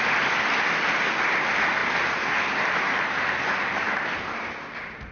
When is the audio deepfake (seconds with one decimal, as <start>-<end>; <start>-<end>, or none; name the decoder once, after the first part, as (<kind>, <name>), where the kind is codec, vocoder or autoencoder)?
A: none